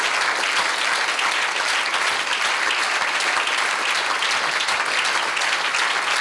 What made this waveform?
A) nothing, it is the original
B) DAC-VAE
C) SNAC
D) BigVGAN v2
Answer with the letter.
A